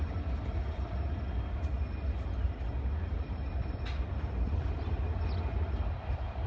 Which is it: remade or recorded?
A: recorded